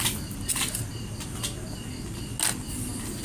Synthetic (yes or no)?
no